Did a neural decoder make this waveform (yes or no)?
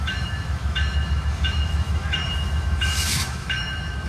yes